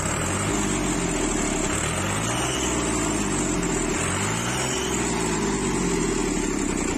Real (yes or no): yes